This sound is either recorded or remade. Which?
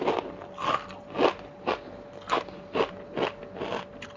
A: recorded